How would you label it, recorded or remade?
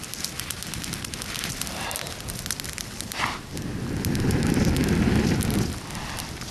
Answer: recorded